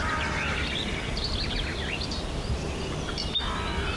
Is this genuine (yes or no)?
yes